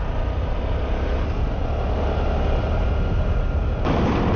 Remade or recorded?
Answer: recorded